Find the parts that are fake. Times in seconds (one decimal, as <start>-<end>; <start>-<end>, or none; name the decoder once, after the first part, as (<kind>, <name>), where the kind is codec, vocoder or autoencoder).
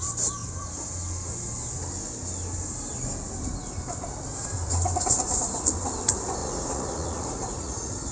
6.4-8.1 (vocoder, Vocos)